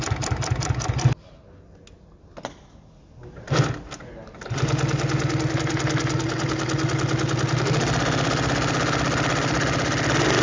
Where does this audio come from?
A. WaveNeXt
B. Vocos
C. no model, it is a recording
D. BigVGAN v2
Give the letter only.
C